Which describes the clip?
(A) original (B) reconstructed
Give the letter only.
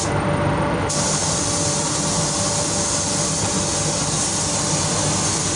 A